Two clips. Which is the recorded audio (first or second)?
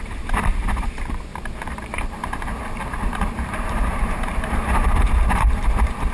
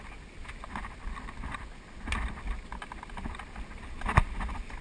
second